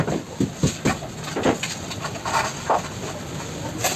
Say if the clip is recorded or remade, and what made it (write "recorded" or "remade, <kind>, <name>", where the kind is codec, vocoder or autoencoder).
recorded